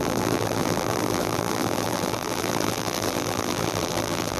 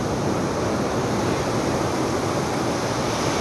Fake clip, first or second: first